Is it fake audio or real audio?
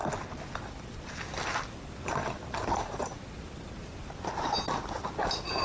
real